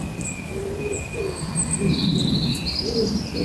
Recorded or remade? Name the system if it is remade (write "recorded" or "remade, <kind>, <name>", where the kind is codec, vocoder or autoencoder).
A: recorded